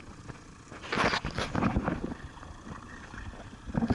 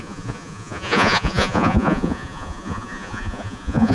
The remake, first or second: second